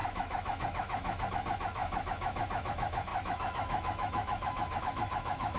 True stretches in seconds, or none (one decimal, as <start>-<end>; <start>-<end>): none